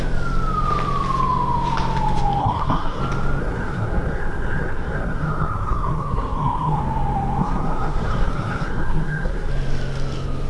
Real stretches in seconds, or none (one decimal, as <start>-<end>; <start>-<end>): 0.0-2.4; 3.0-3.4; 6.8-7.4; 9.5-10.5